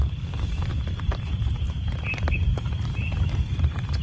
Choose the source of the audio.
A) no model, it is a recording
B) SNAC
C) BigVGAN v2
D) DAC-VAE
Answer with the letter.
C